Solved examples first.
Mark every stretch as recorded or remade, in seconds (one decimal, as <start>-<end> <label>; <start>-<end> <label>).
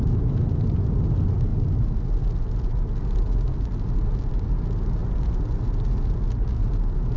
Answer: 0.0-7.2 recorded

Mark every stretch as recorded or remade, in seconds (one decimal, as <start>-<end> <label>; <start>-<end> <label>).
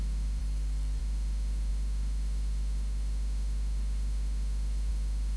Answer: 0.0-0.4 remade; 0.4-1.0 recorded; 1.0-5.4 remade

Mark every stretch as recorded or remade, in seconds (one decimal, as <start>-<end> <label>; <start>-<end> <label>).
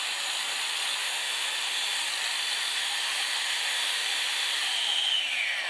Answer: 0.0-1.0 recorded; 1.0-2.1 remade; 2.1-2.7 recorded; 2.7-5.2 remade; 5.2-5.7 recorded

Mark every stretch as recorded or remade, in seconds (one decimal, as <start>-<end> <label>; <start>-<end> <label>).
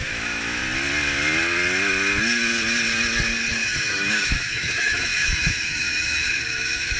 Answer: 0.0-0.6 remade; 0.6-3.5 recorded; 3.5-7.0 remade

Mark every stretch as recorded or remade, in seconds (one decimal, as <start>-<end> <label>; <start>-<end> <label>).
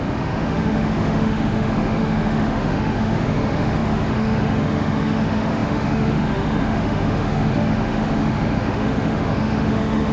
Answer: 0.0-10.1 remade